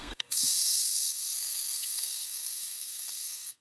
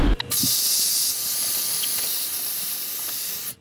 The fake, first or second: first